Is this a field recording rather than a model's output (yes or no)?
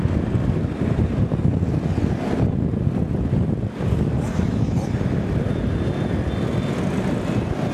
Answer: yes